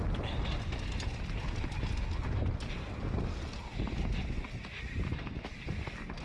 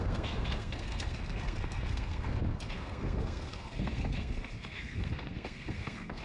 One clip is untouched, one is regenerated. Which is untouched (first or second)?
first